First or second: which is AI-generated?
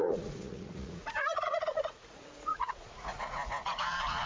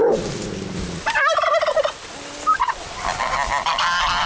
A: first